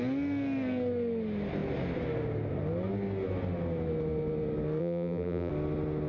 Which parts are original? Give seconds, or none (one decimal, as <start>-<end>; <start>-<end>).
0.0-4.8; 5.5-6.1